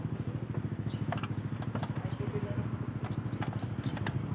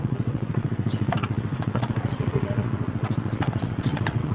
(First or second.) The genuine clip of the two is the first